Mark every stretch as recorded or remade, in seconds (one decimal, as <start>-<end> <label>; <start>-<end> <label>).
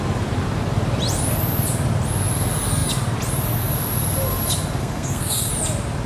0.0-4.8 recorded; 4.8-5.5 remade; 5.5-6.1 recorded